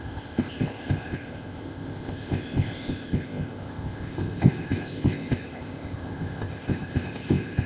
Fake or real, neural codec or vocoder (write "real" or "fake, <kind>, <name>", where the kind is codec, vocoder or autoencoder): fake, codec, ZipCodec